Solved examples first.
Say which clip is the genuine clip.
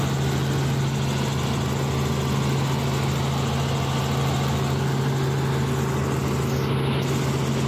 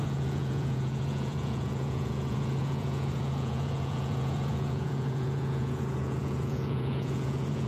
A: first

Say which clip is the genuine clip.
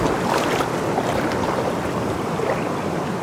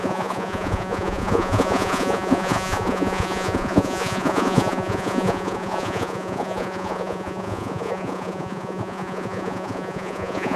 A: first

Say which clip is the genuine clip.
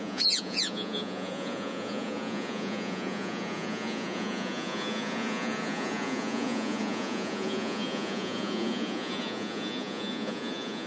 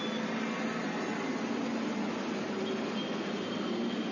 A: second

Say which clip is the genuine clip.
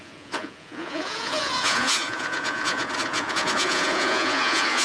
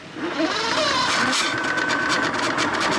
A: second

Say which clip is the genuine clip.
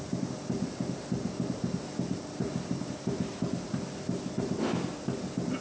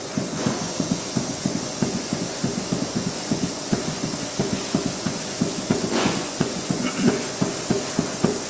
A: first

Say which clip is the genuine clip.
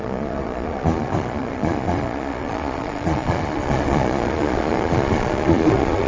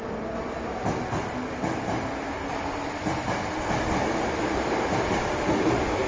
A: second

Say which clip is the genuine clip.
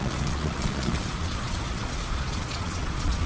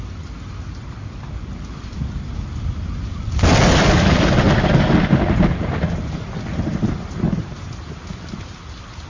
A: second